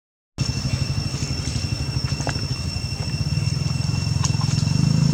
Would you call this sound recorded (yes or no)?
yes